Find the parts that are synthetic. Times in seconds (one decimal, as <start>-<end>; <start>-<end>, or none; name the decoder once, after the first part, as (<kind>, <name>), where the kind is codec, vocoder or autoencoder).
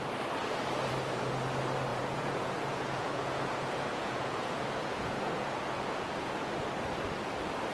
1.9-6.5 (vocoder, Vocos)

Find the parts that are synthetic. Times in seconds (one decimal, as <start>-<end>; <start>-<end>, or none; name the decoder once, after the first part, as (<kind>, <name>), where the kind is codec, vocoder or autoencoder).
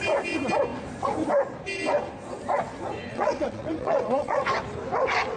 3.1-4.5 (vocoder, WaveNeXt)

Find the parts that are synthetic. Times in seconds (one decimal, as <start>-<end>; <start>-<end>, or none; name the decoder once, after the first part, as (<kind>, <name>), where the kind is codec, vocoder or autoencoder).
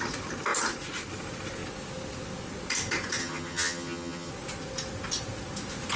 3.2-4.3 (vocoder, HiFi-GAN)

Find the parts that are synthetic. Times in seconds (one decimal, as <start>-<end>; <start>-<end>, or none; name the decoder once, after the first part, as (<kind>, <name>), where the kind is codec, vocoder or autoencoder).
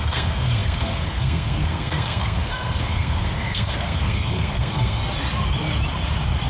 0.0-5.0 (codec, SNAC)